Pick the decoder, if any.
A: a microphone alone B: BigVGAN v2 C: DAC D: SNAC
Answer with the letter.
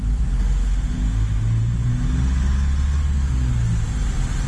A